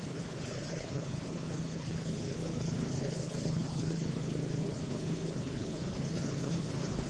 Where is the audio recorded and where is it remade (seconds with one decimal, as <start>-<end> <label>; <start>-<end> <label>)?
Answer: 0.0-7.1 remade

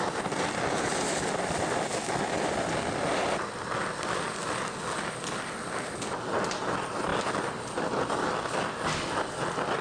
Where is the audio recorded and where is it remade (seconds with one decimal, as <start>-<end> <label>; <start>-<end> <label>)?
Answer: 0.0-9.8 recorded

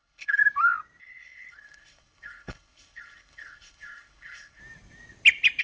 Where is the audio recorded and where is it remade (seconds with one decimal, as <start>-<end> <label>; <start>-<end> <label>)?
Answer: 0.0-0.4 remade; 0.4-1.0 recorded; 1.0-4.6 remade; 4.6-5.6 recorded

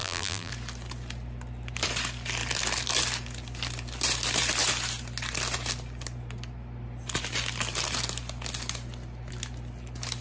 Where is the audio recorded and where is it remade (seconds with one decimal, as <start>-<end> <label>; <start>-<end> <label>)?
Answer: 0.0-0.5 remade; 0.5-10.2 recorded

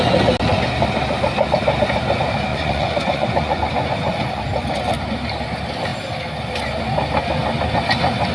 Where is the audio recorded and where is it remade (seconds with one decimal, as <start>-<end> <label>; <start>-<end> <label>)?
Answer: 0.0-2.5 recorded; 2.5-4.4 remade; 4.4-8.3 recorded